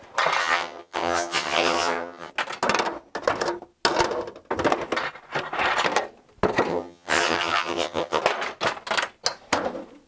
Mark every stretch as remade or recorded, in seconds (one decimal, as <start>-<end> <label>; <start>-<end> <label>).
0.0-0.4 recorded; 0.4-2.3 remade; 2.3-6.7 recorded; 6.7-8.2 remade; 8.2-10.1 recorded